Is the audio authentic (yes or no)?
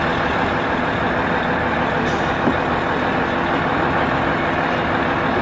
yes